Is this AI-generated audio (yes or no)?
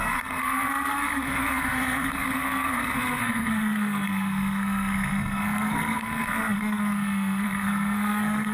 yes